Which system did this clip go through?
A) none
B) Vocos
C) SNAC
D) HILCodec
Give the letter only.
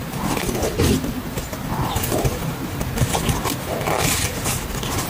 A